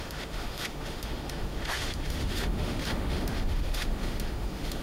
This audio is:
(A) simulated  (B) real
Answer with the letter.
A